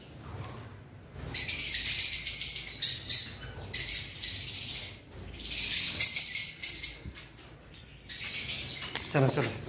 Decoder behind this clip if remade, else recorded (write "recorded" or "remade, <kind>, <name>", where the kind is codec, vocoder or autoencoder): recorded